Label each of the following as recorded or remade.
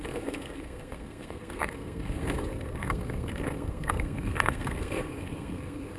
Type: remade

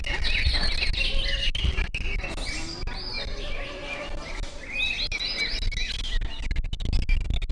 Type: recorded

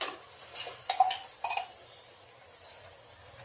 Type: recorded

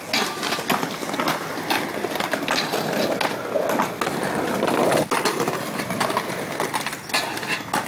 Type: recorded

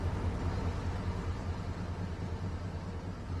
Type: recorded